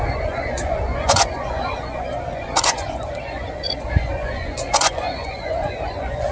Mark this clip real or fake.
fake